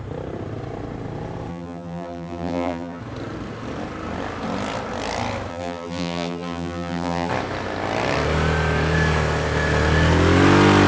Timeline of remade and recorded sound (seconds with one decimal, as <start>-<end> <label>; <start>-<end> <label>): 0.0-1.5 recorded; 1.5-3.0 remade; 3.0-5.5 recorded; 5.5-7.3 remade; 7.3-10.9 recorded